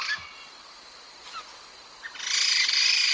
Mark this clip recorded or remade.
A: recorded